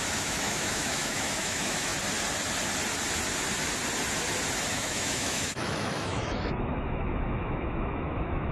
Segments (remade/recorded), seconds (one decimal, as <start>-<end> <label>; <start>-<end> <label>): 0.0-1.9 remade; 1.9-4.7 recorded; 4.7-8.5 remade